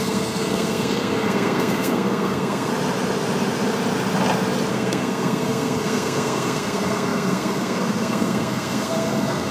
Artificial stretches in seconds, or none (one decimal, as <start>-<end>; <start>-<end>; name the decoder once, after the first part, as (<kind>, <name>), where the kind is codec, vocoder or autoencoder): 0.0-2.7 (codec, SNAC); 4.7-9.5